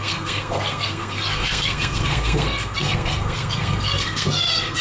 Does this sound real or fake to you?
fake